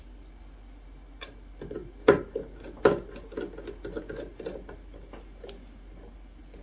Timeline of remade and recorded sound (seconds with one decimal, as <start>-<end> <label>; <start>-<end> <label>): 0.0-6.6 recorded